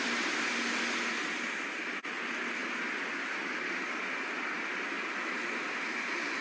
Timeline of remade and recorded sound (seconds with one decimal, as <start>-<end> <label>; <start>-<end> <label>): 0.0-6.4 recorded